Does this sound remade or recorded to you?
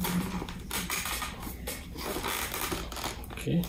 recorded